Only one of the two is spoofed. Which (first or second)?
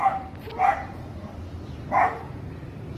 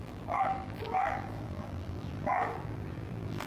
second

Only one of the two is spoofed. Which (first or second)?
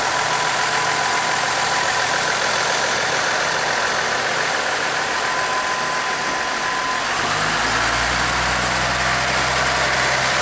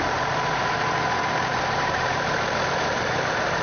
second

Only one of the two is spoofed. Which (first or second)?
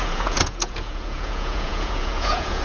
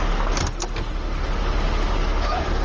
first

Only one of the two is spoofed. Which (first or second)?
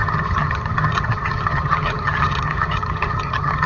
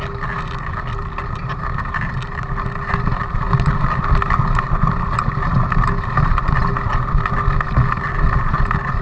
first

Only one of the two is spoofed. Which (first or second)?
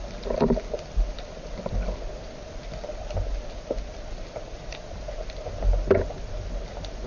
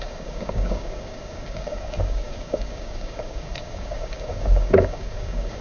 second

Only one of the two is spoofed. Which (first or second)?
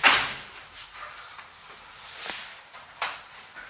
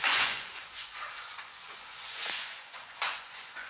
second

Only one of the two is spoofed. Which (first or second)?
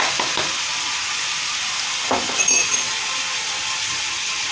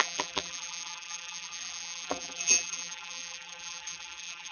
second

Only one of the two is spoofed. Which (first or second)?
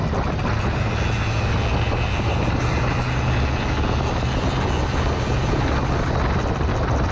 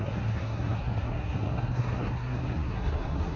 second